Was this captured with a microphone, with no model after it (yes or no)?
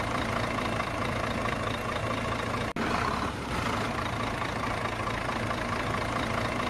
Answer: yes